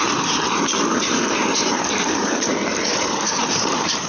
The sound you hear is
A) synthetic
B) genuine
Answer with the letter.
A